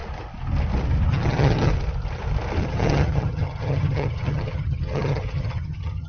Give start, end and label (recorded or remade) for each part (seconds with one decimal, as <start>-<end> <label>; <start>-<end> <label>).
0.0-1.1 recorded; 1.1-1.7 remade; 1.7-2.6 recorded; 2.6-6.1 remade